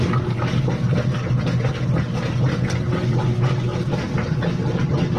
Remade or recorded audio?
recorded